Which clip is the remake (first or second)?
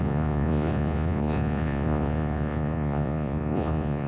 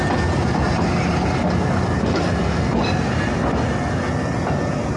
first